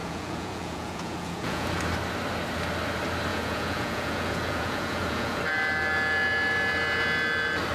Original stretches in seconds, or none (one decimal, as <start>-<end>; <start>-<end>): 1.8-3.3; 5.4-7.7